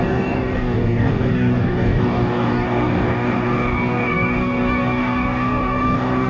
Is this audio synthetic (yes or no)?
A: yes